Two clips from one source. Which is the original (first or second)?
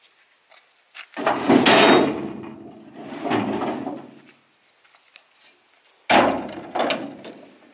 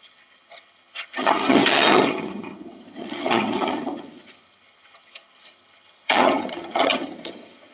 first